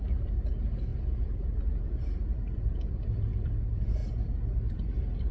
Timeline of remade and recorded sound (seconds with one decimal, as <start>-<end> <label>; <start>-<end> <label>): 0.0-4.0 remade; 4.0-4.7 recorded; 4.7-5.3 remade